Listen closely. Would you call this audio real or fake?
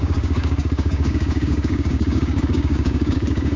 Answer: fake